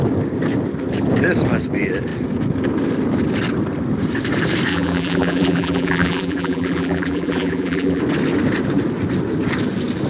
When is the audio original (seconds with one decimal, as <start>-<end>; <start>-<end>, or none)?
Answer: 0.0-4.7; 8.0-10.1